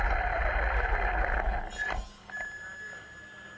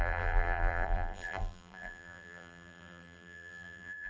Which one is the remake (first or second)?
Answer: second